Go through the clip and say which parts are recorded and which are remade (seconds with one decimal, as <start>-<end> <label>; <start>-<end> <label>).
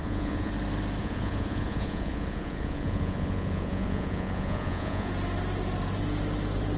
0.0-0.5 remade; 0.5-1.0 recorded; 1.0-5.1 remade; 5.1-6.8 recorded